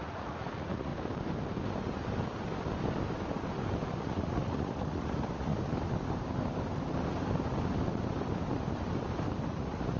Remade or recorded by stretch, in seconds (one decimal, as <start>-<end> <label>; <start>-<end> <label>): 0.0-0.9 remade; 0.9-4.0 recorded; 4.0-5.5 remade; 5.5-9.5 recorded; 9.5-10.0 remade